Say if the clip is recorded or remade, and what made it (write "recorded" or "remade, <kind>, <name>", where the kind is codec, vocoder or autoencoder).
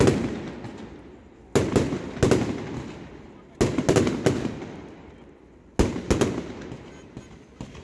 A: recorded